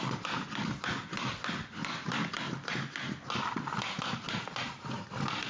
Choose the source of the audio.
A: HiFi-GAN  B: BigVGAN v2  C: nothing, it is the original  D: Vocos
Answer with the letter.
C